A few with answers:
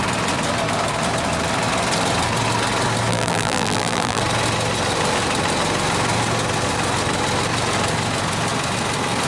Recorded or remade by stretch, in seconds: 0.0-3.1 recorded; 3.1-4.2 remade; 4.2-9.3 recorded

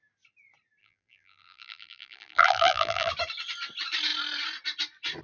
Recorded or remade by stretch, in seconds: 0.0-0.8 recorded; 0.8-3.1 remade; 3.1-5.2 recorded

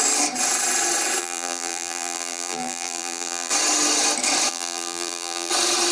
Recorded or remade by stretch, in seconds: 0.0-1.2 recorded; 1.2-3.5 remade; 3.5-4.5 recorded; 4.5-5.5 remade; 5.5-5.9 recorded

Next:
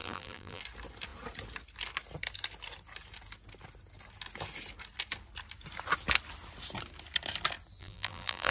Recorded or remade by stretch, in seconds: 0.0-0.6 remade; 0.6-7.8 recorded; 7.8-8.5 remade

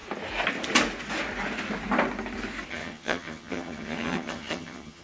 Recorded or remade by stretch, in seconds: 0.0-2.7 recorded; 2.7-5.0 remade

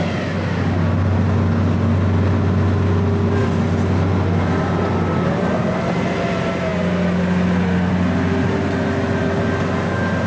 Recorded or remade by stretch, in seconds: 0.0-10.3 recorded

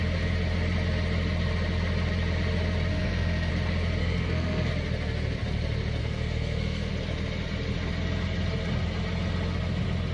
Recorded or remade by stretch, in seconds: 0.0-2.9 recorded; 2.9-3.5 remade; 3.5-4.0 recorded; 4.0-4.7 remade; 4.7-6.0 recorded; 6.0-6.9 remade; 6.9-10.1 recorded

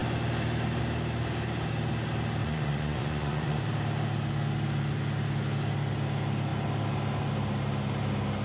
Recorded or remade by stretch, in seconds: 0.0-2.4 recorded; 2.4-3.6 remade; 3.6-8.4 recorded